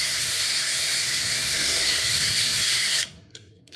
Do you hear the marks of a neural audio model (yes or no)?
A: yes